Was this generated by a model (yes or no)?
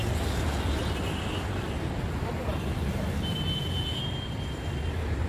no